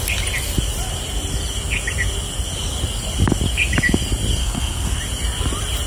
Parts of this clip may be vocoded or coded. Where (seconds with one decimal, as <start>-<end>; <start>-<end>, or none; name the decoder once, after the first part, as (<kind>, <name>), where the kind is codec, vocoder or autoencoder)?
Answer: 4.4-5.0 (codec, SNAC)